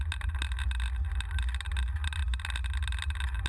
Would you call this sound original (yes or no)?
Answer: yes